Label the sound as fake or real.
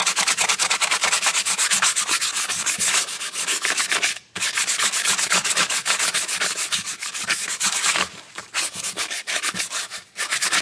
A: fake